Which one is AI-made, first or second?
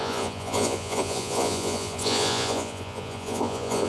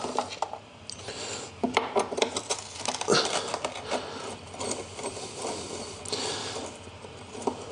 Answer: first